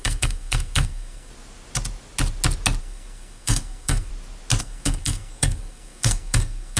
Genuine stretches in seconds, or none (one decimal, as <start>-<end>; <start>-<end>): 1.3-2.8; 4.1-4.6

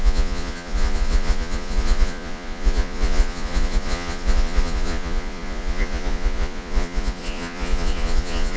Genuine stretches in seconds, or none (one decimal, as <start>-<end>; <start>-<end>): none

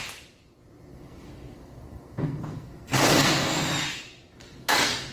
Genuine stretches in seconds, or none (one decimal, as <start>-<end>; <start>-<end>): 0.0-0.9; 3.7-4.4

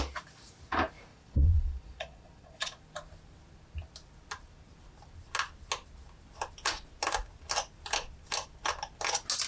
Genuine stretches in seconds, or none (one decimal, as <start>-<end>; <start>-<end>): 0.0-1.1; 2.8-9.5

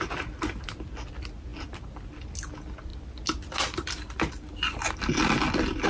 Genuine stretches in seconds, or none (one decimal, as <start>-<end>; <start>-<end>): 0.0-5.9